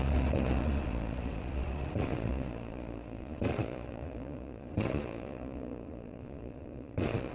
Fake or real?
fake